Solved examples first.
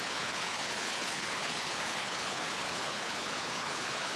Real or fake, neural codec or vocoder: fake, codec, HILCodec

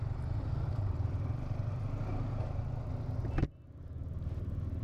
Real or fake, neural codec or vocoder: real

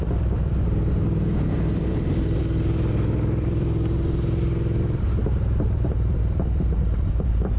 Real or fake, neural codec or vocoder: fake, vocoder, BigVGAN v2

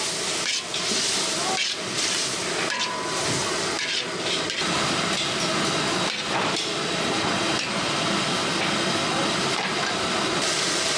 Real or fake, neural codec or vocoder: real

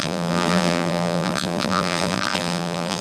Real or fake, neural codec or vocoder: fake, vocoder, BigVGAN v2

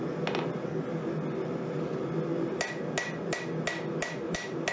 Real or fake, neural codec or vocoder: real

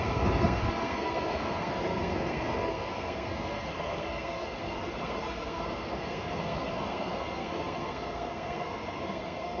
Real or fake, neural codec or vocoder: fake, codec, SNAC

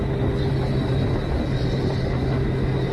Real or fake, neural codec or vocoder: real